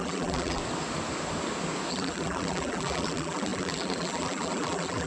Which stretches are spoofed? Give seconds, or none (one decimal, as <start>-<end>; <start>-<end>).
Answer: 0.0-0.6; 1.9-5.1